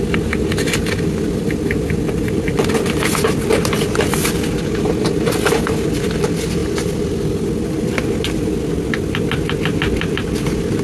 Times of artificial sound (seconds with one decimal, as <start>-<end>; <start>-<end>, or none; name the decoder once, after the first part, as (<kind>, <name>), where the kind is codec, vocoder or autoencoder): none